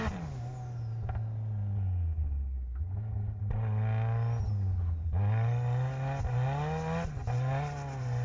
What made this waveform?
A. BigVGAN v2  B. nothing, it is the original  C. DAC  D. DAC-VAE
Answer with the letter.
B